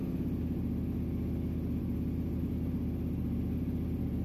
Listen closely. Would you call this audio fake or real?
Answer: real